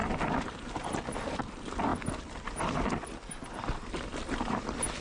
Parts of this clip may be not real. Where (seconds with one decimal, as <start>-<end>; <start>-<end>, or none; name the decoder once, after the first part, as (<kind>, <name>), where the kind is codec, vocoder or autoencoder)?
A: none